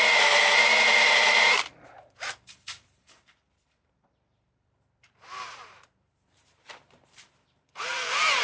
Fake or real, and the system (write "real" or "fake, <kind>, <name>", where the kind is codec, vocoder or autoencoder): fake, vocoder, BigVGAN v2